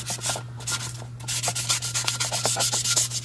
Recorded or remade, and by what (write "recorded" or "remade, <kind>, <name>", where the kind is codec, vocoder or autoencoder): recorded